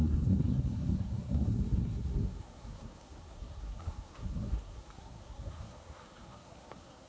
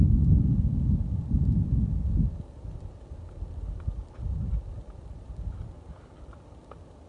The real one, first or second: second